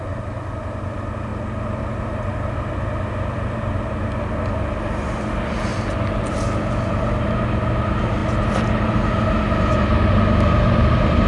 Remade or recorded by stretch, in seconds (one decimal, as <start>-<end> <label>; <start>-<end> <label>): 0.0-11.3 recorded